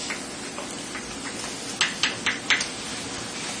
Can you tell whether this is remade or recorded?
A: recorded